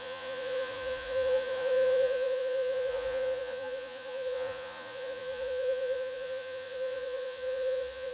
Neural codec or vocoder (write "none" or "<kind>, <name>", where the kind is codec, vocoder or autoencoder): vocoder, Vocos